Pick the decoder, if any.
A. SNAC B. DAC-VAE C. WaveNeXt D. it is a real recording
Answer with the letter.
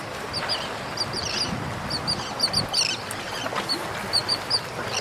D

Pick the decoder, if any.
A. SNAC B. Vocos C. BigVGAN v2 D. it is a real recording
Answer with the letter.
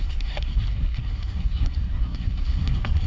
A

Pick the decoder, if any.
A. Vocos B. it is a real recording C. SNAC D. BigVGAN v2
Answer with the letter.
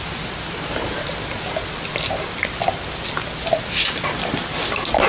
B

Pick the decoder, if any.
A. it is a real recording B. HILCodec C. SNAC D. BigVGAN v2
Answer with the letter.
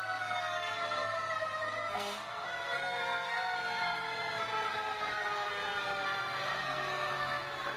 C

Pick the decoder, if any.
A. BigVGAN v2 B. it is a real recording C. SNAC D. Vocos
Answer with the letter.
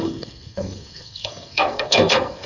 C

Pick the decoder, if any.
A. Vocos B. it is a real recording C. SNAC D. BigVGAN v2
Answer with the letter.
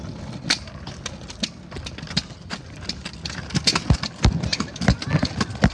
B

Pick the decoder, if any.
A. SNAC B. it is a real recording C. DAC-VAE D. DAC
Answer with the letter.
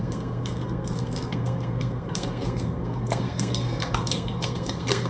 A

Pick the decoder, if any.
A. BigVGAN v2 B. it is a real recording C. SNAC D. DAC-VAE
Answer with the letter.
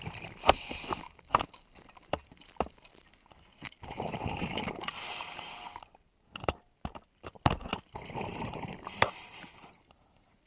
B